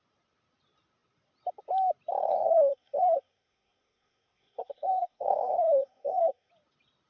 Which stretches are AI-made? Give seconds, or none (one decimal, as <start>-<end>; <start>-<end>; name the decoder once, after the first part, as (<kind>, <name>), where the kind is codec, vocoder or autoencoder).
2.2-6.5 (codec, SNAC)